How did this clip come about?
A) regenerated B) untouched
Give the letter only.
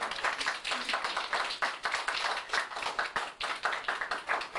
B